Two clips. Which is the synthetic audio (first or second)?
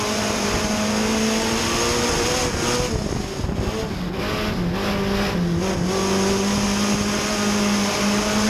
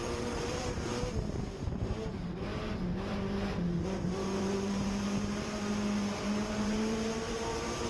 second